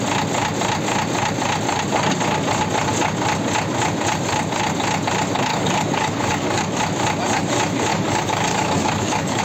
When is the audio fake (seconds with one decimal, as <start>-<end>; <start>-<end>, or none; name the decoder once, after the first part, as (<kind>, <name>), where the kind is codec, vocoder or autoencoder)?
5.5-6.8 (codec, DAC); 7.9-9.4